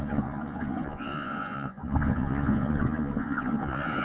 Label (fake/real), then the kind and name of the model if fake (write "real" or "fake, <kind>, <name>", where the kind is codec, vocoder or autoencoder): fake, vocoder, Vocos